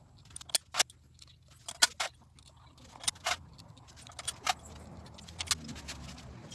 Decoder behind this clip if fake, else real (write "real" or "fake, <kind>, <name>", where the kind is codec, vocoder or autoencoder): real